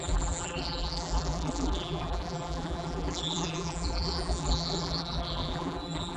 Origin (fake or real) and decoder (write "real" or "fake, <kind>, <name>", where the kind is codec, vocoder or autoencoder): fake, vocoder, BigVGAN v2